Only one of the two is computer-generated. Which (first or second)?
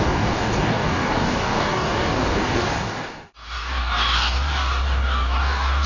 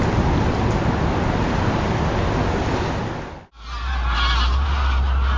first